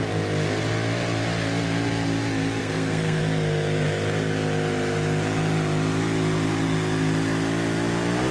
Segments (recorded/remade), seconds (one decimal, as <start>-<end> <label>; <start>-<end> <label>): 0.0-2.6 recorded; 2.6-3.2 remade; 3.2-8.3 recorded